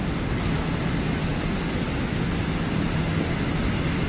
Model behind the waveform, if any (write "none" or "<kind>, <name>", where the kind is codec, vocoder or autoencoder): none